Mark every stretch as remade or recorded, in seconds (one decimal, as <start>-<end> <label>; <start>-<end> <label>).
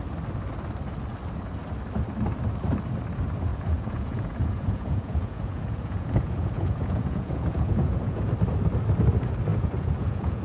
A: 0.0-3.5 recorded; 3.5-8.3 remade; 8.3-9.5 recorded; 9.5-10.4 remade